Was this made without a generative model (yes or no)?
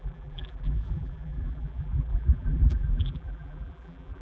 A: no